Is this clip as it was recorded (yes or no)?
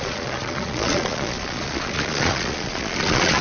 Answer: no